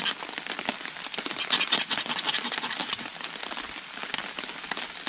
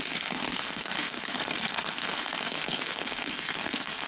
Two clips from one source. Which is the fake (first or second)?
second